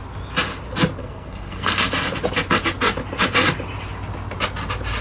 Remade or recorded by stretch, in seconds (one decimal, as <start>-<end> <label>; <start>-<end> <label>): 0.0-1.0 recorded; 1.0-1.9 remade; 1.9-5.0 recorded